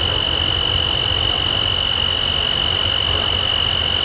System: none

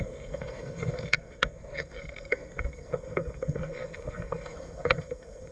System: codec, SNAC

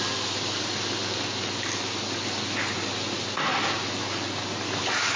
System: none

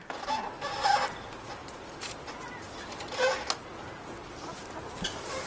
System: none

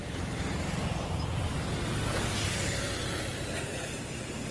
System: none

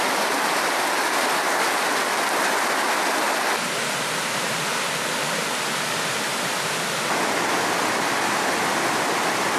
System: none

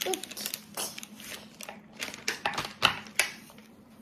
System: none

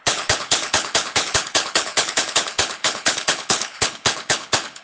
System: codec, HILCodec